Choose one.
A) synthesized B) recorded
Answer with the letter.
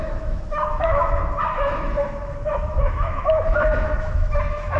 A